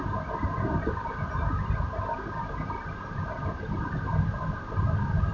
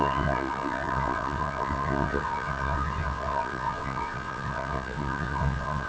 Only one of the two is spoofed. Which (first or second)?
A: second